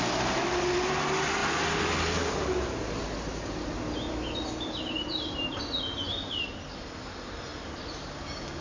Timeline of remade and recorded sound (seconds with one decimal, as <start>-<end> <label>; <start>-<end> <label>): 0.0-8.6 recorded